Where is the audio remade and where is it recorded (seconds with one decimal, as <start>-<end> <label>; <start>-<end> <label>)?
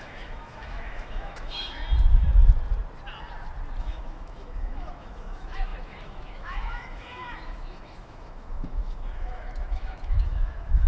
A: 0.0-1.8 remade; 1.8-3.8 recorded; 3.8-10.9 remade